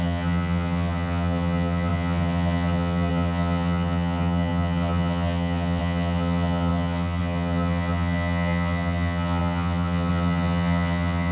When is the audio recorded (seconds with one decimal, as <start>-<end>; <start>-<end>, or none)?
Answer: none